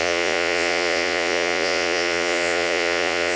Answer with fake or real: fake